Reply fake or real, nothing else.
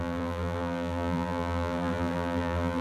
fake